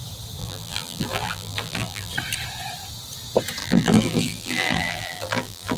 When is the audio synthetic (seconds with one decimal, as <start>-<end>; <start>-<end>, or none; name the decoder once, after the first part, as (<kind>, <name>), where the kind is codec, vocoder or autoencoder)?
0.4-2.1 (vocoder, BigVGAN v2); 3.6-5.8